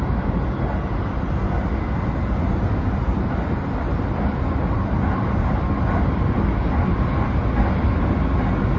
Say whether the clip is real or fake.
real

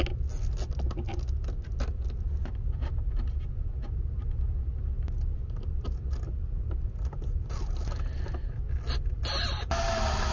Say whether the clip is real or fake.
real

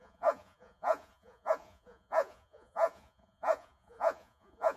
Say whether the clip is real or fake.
fake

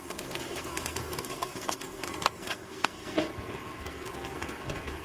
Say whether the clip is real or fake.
fake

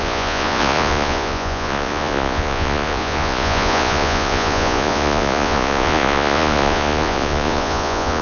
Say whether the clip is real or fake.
fake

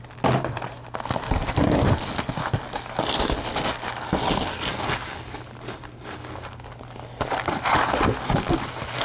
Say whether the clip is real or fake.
real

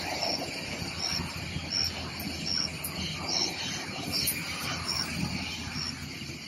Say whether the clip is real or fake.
real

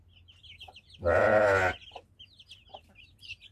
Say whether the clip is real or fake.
real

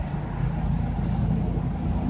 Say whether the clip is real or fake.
real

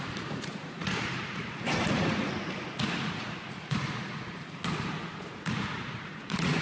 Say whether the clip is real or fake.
fake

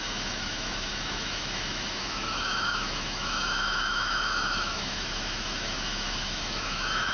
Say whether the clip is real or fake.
fake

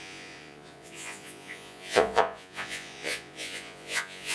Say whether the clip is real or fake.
fake